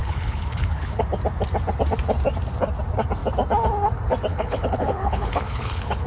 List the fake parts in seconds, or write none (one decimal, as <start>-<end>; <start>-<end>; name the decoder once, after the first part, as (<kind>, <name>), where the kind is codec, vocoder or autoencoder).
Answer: 0.0-1.0 (codec, HILCodec); 4.3-6.1